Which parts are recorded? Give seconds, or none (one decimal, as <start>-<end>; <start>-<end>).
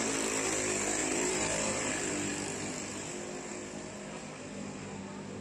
0.0-1.0; 1.9-5.4